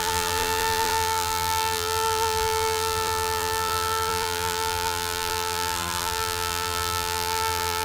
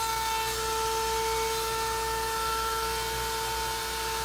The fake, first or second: first